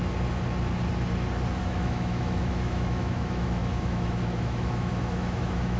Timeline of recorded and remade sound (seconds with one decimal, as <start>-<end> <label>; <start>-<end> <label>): 0.0-1.6 recorded; 1.6-5.8 remade